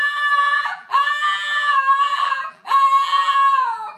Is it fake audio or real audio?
fake